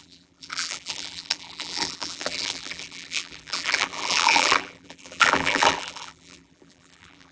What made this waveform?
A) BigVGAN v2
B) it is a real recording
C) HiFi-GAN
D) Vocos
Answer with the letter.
A